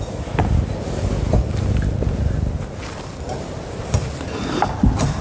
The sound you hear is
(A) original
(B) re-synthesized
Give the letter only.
A